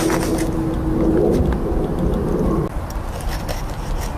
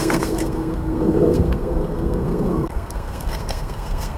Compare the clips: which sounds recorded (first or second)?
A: first